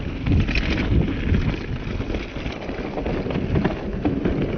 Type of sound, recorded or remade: recorded